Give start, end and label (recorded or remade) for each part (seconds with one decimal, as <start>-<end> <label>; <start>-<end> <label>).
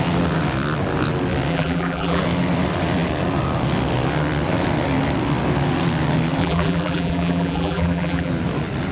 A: 0.0-1.5 recorded; 1.5-2.2 remade; 2.2-6.4 recorded; 6.4-8.3 remade; 8.3-8.9 recorded